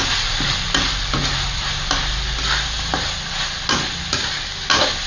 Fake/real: real